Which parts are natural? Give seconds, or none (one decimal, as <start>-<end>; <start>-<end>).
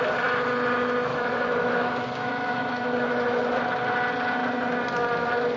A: 0.0-1.1; 3.6-5.6